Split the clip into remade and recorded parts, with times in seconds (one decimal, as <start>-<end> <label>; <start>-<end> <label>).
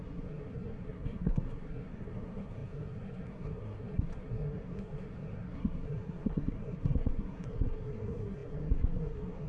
0.0-9.5 remade